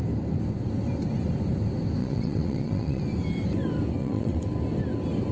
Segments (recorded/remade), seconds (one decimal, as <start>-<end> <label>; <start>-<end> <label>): 0.0-2.0 recorded; 2.0-3.0 remade; 3.0-4.0 recorded; 4.0-4.5 remade; 4.5-5.3 recorded